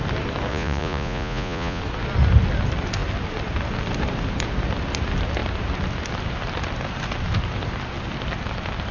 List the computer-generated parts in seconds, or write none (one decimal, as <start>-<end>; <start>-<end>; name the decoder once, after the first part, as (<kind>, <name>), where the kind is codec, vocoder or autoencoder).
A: 0.5-1.8 (vocoder, Vocos)